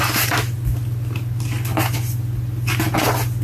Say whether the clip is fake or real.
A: real